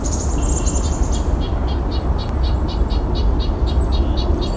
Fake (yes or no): no